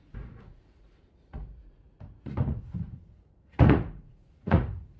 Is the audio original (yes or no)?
no